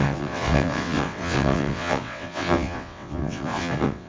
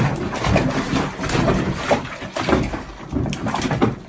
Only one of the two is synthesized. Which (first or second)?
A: first